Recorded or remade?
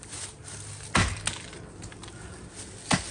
recorded